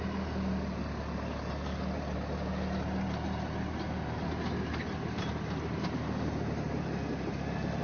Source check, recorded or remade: recorded